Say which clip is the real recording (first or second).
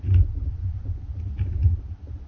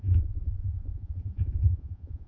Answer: first